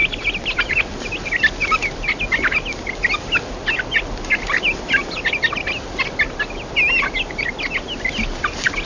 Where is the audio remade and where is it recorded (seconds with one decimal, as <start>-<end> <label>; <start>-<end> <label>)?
0.0-8.9 recorded